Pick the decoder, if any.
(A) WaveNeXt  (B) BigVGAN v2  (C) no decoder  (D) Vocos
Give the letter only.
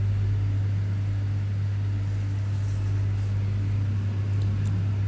C